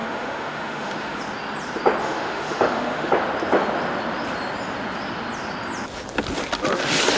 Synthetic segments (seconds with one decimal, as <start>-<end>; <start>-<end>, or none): 0.0-1.2; 2.0-3.1